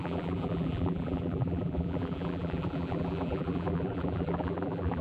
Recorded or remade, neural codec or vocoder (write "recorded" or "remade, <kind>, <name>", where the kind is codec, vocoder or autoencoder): remade, vocoder, BigVGAN v2